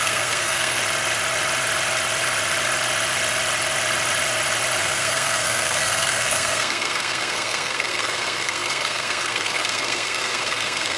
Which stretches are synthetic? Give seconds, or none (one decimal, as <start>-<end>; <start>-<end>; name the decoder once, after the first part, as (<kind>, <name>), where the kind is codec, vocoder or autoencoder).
0.0-0.8 (codec, SNAC); 4.8-11.0